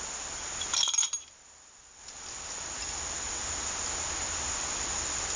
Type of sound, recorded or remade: recorded